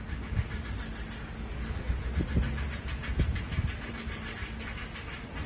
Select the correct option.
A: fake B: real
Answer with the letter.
B